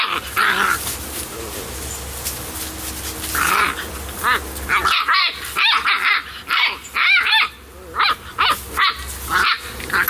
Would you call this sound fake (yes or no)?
no